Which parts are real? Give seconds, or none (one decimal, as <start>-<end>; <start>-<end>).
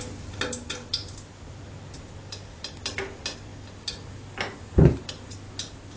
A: 0.0-6.0